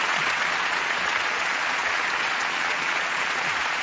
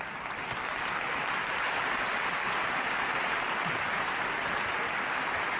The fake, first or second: first